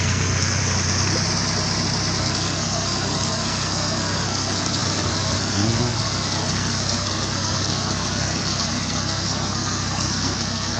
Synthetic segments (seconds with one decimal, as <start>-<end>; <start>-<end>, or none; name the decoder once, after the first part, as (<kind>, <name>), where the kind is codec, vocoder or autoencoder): 0.0-0.6 (codec, SNAC); 2.2-10.8